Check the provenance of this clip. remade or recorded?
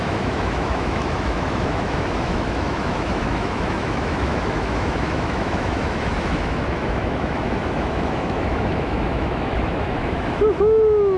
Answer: remade